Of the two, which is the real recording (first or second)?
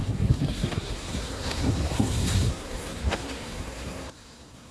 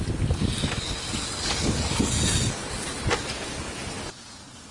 second